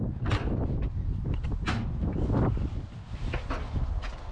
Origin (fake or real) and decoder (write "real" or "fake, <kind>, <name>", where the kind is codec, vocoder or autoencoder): real